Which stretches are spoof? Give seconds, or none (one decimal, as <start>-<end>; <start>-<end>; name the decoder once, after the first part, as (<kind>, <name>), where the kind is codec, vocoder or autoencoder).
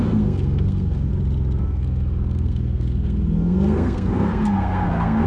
0.0-1.1 (codec, SNAC); 1.6-5.3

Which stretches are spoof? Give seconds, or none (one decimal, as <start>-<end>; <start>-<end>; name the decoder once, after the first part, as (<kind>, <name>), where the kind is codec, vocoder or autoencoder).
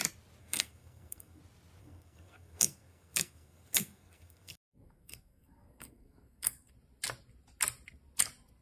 0.4-1.4 (codec, SNAC); 1.8-6.7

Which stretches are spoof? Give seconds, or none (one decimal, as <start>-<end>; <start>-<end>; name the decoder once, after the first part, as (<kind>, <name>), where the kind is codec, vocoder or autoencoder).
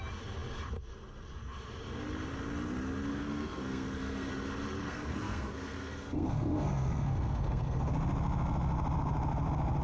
3.1-4.3 (codec, SNAC); 4.8-7.9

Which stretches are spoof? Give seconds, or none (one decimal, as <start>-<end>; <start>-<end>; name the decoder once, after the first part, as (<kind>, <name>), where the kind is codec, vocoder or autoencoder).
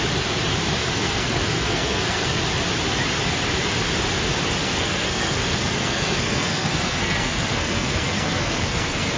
0.8-2.4 (codec, SNAC); 4.6-9.2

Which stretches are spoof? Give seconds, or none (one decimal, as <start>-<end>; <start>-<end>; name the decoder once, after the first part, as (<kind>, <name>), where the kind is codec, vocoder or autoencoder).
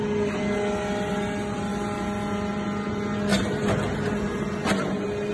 none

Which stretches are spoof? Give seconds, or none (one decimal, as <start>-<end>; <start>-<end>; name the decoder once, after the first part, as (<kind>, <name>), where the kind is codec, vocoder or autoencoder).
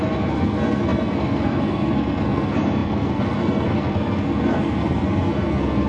0.0-5.9 (codec, SNAC)